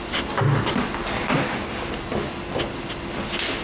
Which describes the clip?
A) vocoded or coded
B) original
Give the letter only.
B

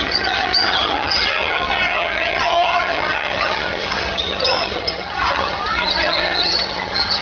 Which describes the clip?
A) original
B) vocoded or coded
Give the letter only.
B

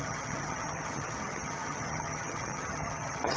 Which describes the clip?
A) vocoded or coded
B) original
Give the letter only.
A